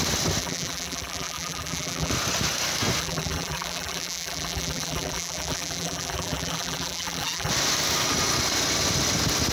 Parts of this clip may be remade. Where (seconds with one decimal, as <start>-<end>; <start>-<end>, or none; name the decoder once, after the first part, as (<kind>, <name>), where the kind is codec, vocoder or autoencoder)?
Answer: 0.4-2.1 (vocoder, BigVGAN v2); 3.0-7.5